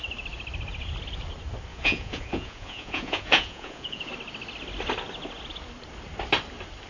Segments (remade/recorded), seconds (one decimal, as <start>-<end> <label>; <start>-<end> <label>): 0.0-1.7 recorded; 1.7-4.1 remade; 4.1-6.9 recorded